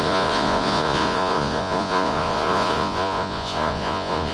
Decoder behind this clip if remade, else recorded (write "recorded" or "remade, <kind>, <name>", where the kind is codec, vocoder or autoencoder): remade, vocoder, Vocos